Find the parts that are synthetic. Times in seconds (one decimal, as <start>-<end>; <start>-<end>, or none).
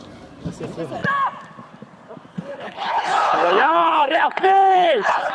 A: 2.3-5.3